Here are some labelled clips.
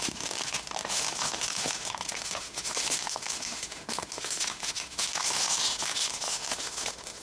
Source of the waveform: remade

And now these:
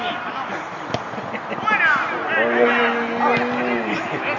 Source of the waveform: recorded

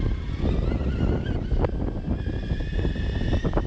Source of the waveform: recorded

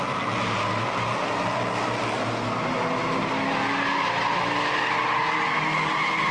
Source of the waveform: recorded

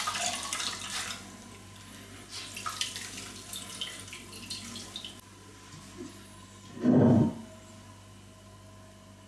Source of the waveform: recorded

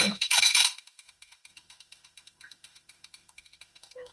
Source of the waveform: remade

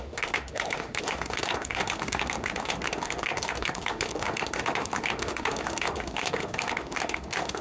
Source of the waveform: remade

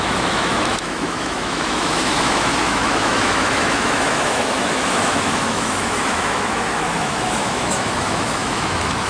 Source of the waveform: remade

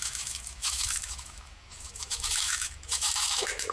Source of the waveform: remade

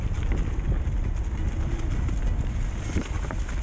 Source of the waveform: recorded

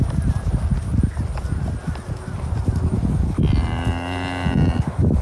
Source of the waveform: recorded